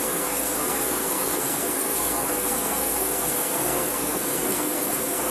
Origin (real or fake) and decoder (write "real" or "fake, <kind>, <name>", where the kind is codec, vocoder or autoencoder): fake, codec, SNAC